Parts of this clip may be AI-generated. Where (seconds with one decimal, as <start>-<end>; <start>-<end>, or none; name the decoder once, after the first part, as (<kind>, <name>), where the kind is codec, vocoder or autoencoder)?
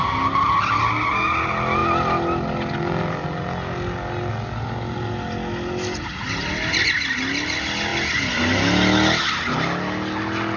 none